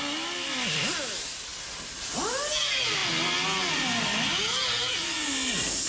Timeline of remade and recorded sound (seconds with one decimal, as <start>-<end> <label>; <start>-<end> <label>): 0.0-5.9 recorded